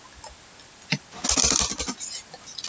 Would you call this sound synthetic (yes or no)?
no